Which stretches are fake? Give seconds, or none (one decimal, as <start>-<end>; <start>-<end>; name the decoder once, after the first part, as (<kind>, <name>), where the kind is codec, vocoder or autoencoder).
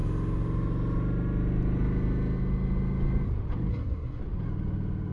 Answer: 3.7-4.2 (codec, SNAC)